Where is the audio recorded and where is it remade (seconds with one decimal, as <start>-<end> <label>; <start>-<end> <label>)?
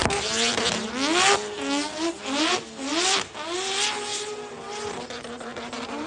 0.0-0.9 remade; 0.9-4.1 recorded; 4.1-6.1 remade